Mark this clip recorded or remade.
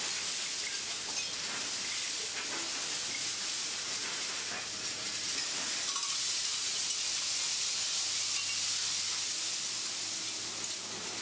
recorded